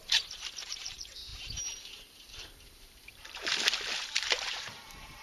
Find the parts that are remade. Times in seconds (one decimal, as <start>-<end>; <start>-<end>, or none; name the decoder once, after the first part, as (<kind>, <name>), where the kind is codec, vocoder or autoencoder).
0.0-3.5 (vocoder, BigVGAN v2); 4.0-5.2